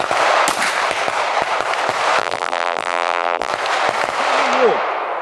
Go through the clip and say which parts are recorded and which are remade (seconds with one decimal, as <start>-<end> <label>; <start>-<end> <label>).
0.0-2.2 recorded; 2.2-3.5 remade; 3.5-5.2 recorded